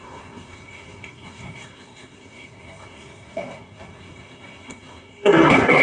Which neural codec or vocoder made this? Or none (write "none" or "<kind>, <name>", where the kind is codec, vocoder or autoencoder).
codec, SNAC